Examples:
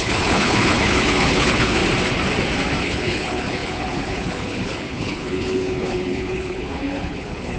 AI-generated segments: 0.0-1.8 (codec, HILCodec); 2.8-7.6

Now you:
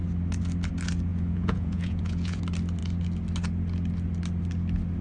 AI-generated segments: 1.1-2.4 (vocoder, Vocos)